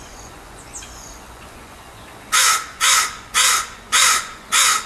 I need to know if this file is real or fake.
fake